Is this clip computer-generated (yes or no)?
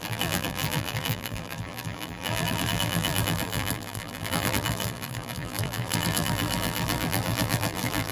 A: yes